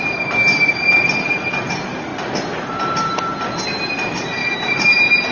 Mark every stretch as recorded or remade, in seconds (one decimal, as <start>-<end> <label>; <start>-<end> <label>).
0.0-2.1 remade; 2.1-3.9 recorded; 3.9-5.3 remade